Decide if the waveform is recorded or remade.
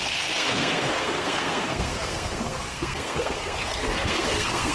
remade